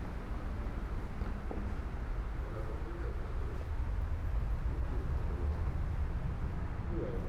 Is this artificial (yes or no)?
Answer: no